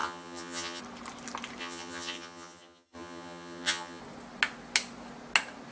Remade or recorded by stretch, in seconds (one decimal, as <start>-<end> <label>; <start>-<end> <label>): 0.0-0.8 remade; 0.8-1.6 recorded; 1.6-4.0 remade; 4.0-5.7 recorded